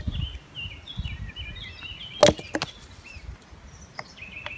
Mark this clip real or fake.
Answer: real